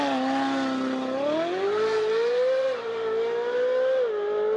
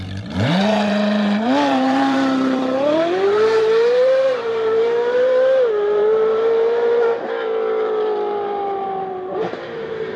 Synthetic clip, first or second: second